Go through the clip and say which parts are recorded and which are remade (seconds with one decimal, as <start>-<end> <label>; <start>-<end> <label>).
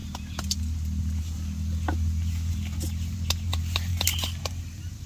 0.0-3.1 recorded; 3.1-3.9 remade; 3.9-4.6 recorded; 4.6-5.1 remade